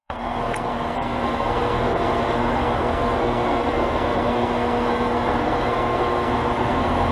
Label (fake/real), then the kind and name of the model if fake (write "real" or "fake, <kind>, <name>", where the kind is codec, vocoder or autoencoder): fake, codec, SNAC